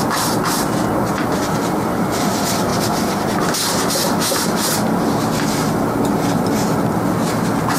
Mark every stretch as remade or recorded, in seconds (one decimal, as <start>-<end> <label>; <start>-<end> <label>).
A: 0.0-7.8 recorded